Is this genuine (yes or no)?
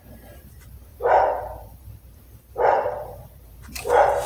no